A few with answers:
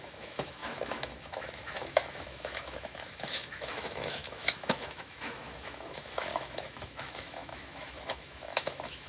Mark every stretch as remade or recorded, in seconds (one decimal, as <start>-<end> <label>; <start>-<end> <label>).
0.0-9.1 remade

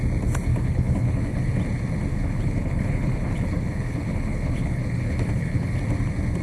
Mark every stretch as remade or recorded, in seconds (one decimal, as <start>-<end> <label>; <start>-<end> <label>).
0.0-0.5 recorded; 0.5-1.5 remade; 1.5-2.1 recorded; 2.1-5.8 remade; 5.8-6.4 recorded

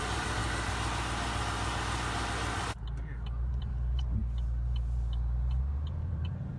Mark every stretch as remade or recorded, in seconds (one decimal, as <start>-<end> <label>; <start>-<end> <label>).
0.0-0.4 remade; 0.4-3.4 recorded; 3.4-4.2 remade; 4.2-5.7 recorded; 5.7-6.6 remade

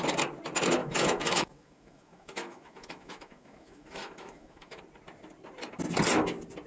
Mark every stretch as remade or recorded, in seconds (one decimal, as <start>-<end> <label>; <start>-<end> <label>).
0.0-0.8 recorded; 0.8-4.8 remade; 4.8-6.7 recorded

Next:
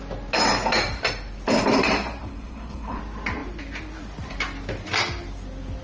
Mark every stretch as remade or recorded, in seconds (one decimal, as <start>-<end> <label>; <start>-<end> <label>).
0.0-2.2 recorded; 2.2-3.0 remade; 3.0-5.8 recorded

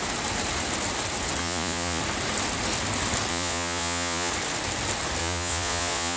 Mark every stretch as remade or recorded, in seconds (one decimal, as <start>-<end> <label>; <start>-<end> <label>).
0.0-1.4 recorded; 1.4-2.0 remade; 2.0-3.3 recorded; 3.3-4.3 remade; 4.3-5.2 recorded; 5.2-6.2 remade